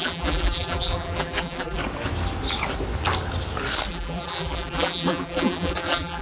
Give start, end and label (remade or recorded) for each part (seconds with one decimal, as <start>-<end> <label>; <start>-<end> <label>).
0.0-1.8 remade; 1.8-3.9 recorded; 3.9-6.2 remade